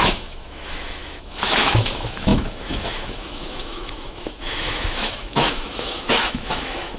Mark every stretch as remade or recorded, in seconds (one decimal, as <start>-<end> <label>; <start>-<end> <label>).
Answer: 0.0-7.0 remade